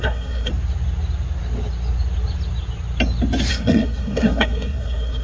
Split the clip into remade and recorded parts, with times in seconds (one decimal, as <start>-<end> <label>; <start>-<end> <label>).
0.0-0.5 remade; 0.5-3.5 recorded; 3.5-5.2 remade